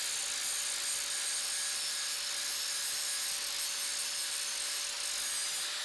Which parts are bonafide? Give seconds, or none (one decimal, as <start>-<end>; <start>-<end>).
0.0-5.8